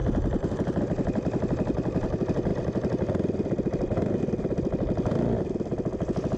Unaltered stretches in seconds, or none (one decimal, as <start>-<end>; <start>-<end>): 0.0-6.4